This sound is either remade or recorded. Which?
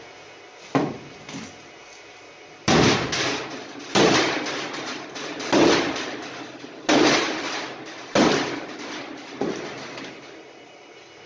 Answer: recorded